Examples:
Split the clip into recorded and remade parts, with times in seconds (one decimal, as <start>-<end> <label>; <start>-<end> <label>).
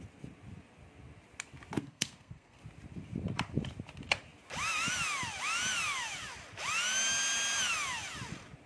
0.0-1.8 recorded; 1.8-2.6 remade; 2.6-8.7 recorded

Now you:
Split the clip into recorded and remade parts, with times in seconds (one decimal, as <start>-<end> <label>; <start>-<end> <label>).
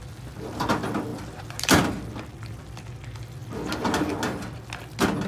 0.0-5.3 recorded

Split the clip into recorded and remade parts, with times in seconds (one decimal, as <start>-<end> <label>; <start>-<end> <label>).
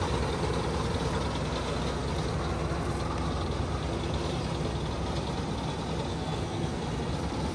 0.0-6.1 recorded; 6.1-6.8 remade; 6.8-7.5 recorded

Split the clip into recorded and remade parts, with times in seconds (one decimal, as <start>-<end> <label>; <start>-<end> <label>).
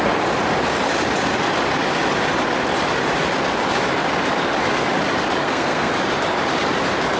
0.0-5.4 recorded; 5.4-5.9 remade; 5.9-7.2 recorded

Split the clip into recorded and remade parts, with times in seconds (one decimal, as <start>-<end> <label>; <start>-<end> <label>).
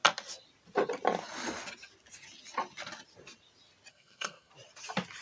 0.0-3.9 recorded; 3.9-4.5 remade; 4.5-5.2 recorded